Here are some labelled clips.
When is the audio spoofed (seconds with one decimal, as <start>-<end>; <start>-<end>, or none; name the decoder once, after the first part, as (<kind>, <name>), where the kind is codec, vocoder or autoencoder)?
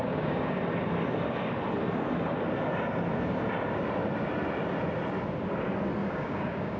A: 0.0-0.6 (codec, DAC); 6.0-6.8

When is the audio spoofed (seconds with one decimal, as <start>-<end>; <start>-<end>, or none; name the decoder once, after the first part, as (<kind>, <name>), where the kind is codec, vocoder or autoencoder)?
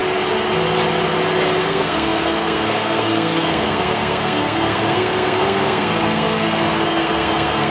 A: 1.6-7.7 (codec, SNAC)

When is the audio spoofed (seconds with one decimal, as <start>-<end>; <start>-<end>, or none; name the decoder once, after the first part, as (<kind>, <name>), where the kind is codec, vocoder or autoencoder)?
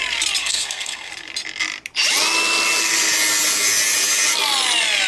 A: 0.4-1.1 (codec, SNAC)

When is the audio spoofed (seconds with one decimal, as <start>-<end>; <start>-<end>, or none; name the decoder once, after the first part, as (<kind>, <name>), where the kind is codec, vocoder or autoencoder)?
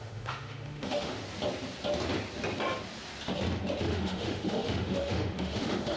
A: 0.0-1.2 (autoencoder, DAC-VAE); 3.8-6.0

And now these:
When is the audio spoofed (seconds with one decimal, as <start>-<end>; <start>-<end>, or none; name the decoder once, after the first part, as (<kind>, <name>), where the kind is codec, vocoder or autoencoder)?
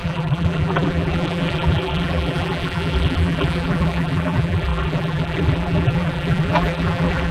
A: 0.0-7.3 (vocoder, BigVGAN v2)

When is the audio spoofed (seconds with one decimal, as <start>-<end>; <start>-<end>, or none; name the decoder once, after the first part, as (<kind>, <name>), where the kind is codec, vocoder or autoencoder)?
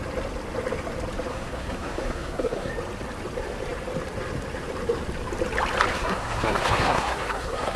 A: 1.3-2.7 (codec, SNAC); 5.9-7.8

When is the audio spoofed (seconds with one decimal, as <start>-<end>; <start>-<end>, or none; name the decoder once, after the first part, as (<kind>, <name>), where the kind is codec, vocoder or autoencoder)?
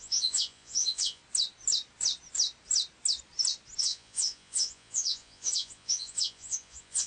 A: 0.0-1.2 (vocoder, Vocos); 3.8-7.1